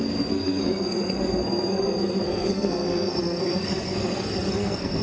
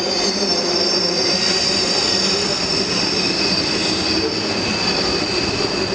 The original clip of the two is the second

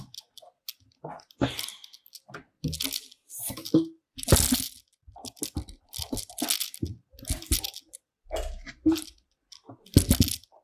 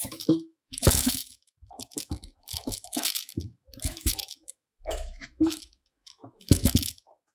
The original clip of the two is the first